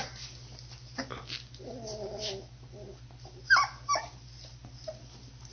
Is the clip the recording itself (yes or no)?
yes